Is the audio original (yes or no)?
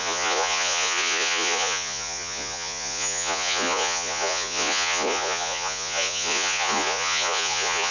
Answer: no